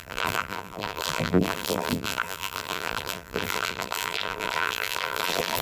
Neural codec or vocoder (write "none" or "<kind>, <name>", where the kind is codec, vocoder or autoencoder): vocoder, BigVGAN v2